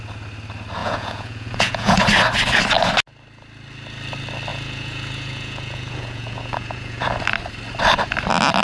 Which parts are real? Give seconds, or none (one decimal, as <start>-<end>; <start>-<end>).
0.0-0.8; 2.0-4.5; 7.1-8.6